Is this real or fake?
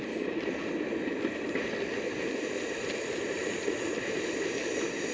real